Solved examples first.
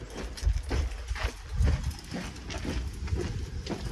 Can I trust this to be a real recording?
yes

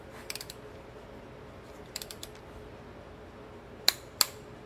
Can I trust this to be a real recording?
no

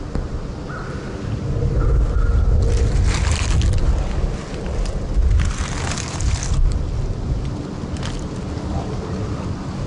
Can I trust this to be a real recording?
yes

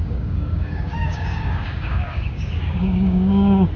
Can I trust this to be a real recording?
no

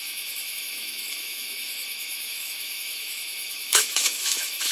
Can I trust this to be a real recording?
no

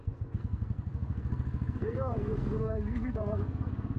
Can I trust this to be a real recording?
no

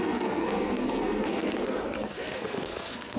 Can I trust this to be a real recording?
no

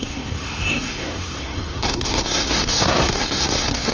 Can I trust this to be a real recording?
no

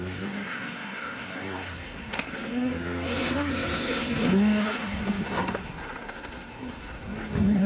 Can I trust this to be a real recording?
no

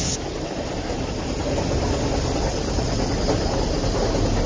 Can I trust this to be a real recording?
yes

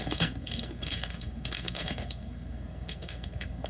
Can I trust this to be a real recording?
no